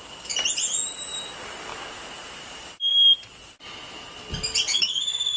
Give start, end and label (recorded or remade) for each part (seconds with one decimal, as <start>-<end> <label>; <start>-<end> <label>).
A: 0.0-4.7 recorded; 4.7-5.4 remade